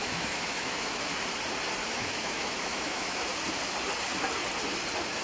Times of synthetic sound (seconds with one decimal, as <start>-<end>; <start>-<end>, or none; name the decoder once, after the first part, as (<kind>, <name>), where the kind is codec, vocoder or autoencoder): 0.0-1.1 (autoencoder, DAC-VAE); 1.9-3.3